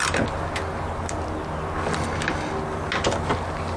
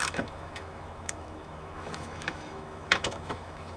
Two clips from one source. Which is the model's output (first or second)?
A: second